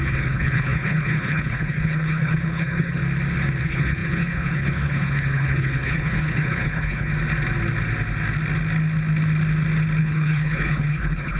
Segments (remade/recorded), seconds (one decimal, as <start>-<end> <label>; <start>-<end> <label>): 0.0-3.0 remade; 3.0-3.6 recorded; 3.6-7.1 remade; 7.1-10.0 recorded; 10.0-11.4 remade